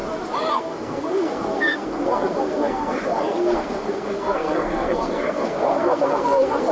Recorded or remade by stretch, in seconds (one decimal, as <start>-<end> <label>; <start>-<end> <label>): 0.0-0.5 recorded; 0.5-6.7 remade